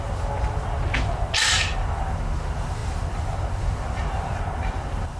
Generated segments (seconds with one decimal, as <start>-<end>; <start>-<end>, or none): 0.0-5.2